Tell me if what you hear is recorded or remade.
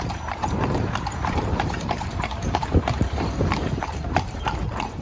remade